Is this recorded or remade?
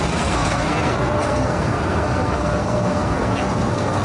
remade